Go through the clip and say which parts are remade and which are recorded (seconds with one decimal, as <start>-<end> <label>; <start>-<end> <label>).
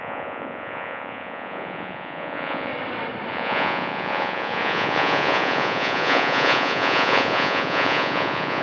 0.0-2.7 remade; 2.7-3.3 recorded; 3.3-8.6 remade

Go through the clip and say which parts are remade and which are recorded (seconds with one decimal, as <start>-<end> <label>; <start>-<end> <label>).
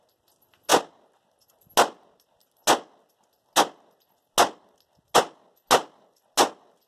0.0-6.9 recorded